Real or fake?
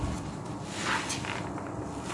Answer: real